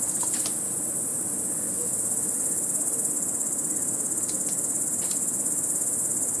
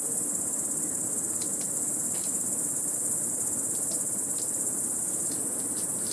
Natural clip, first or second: first